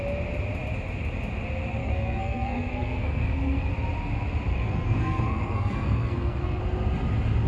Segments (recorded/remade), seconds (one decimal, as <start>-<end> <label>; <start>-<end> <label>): 0.0-1.8 recorded; 1.8-3.7 remade; 3.7-4.5 recorded; 4.5-6.6 remade; 6.6-7.5 recorded